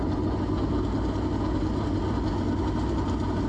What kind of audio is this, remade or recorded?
recorded